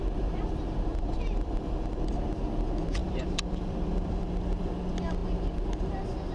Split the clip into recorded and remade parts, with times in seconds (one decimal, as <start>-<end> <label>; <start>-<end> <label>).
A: 0.0-0.9 recorded; 0.9-2.0 remade; 2.0-3.0 recorded; 3.0-4.7 remade; 4.7-6.3 recorded